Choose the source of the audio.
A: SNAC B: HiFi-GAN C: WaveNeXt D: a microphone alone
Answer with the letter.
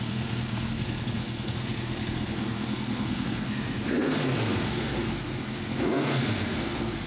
A